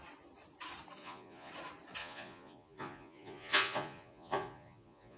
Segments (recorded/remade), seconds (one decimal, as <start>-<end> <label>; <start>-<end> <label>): 0.0-1.0 recorded; 1.0-1.5 remade; 1.5-2.0 recorded; 2.0-5.2 remade